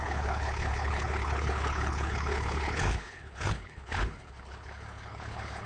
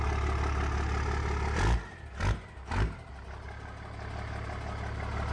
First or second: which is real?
second